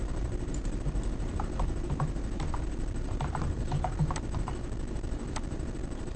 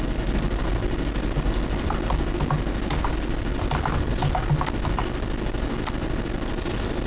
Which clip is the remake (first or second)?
first